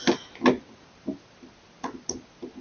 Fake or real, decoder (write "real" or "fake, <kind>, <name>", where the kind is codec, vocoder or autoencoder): real